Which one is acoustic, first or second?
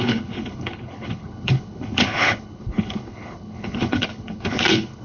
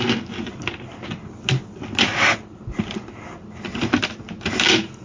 second